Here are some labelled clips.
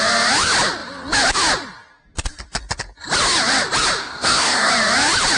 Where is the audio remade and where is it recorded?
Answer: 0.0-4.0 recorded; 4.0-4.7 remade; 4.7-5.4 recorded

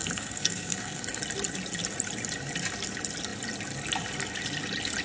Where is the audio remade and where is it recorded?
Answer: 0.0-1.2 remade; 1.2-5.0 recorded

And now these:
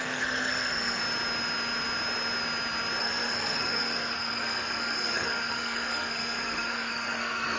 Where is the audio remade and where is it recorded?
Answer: 0.0-1.0 remade; 1.0-3.0 recorded; 3.0-7.6 remade

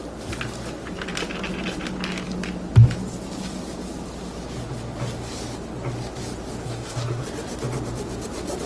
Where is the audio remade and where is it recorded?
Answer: 0.0-6.6 recorded; 6.6-7.2 remade; 7.2-8.7 recorded

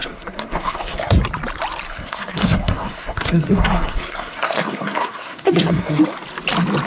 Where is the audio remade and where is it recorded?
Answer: 0.0-1.2 remade; 1.2-1.9 recorded; 1.9-6.0 remade; 6.0-6.9 recorded

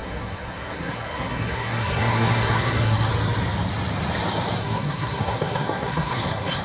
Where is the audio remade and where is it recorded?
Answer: 0.0-3.1 remade; 3.1-4.6 recorded; 4.6-6.6 remade